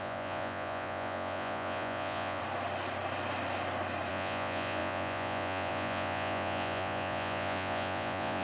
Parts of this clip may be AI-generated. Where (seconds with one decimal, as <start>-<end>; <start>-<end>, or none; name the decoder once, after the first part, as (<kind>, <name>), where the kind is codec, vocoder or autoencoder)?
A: 0.0-2.4 (vocoder, Vocos); 4.1-8.4